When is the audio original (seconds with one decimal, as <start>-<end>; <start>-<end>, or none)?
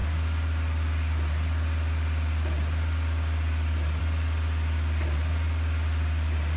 0.0-6.6